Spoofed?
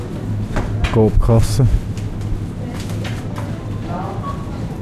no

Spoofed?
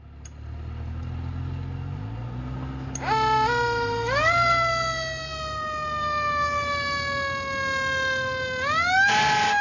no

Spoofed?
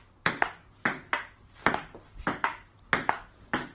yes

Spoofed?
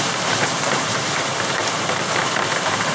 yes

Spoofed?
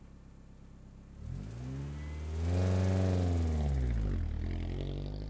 no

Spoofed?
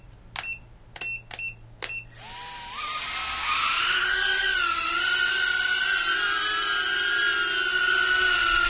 no